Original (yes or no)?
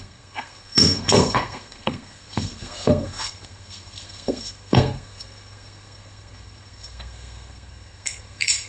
no